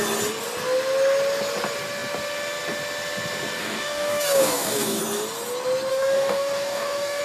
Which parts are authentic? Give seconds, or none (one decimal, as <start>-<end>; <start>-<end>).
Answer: 0.0-3.6; 5.0-5.9